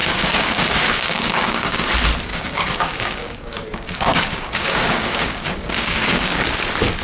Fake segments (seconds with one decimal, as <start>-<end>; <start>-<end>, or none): 0.0-1.9; 2.3-6.5